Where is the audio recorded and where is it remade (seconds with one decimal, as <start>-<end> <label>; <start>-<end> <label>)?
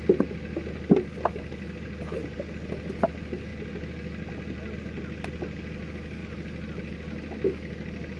0.0-8.2 recorded